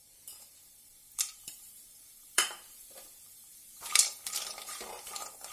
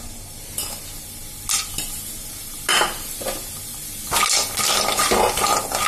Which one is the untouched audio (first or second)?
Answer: second